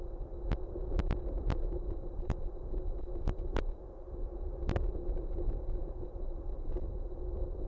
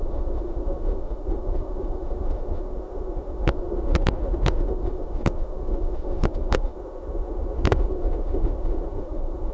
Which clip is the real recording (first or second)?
first